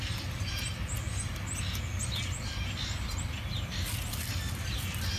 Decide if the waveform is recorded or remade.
recorded